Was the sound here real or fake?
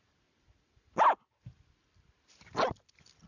real